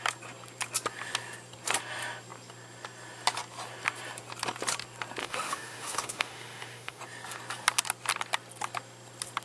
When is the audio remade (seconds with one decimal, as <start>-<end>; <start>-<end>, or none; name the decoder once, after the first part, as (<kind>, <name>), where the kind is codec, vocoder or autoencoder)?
5.2-7.0 (autoencoder, DAC-VAE)